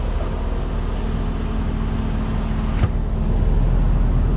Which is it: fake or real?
real